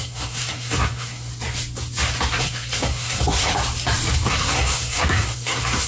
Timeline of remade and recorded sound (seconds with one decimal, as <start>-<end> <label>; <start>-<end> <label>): 0.0-1.3 remade; 1.3-2.4 recorded; 2.4-3.5 remade; 3.5-4.3 recorded; 4.3-5.9 remade